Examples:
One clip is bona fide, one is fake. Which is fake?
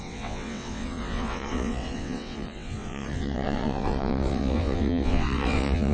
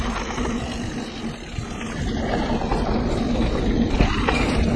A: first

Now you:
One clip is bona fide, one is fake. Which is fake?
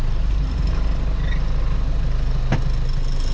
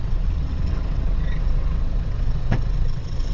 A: second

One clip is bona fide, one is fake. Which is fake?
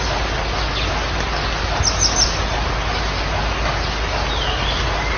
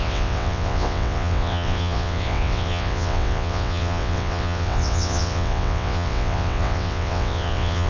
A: second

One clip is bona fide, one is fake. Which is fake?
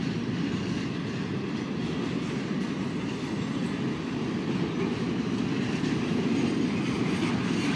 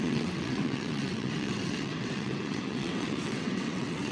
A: second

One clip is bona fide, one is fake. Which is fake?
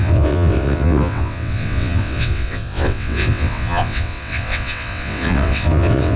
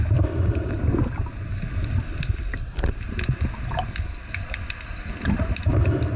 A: first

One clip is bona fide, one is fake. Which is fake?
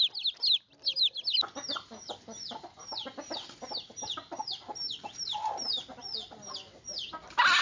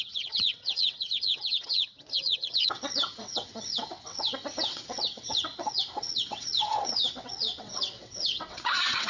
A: second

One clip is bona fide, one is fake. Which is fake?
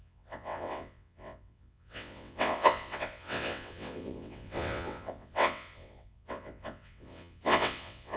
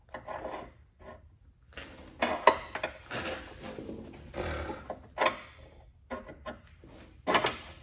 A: first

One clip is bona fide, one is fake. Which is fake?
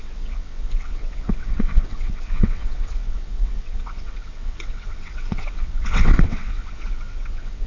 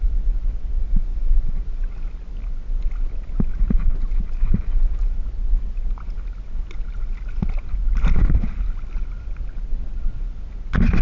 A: first